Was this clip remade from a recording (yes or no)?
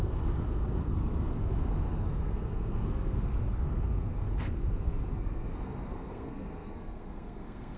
yes